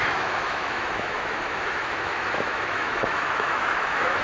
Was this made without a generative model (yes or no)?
no